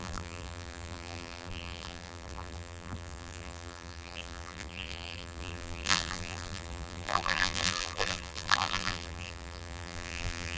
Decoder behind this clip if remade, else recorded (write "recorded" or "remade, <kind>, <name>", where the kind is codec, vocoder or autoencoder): remade, vocoder, BigVGAN v2